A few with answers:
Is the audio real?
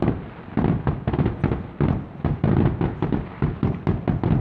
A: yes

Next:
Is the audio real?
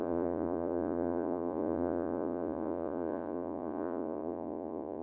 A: no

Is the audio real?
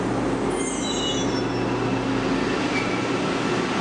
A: yes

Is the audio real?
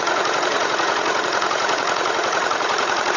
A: no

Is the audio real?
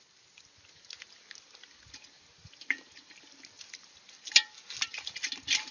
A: yes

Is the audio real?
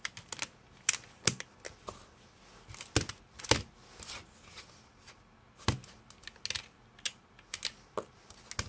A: yes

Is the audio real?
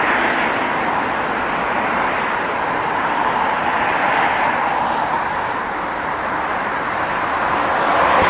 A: yes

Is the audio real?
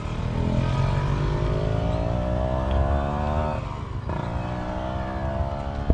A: yes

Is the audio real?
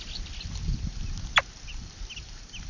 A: yes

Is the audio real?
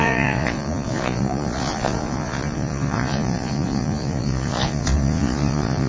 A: no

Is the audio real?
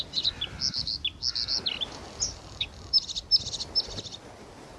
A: yes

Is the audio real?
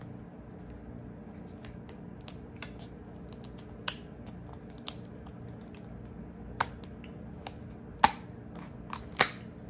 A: yes